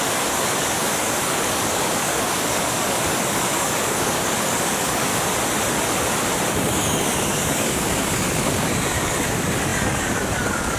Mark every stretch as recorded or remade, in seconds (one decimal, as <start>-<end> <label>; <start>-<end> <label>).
0.0-5.1 remade; 5.1-6.5 recorded; 6.5-10.8 remade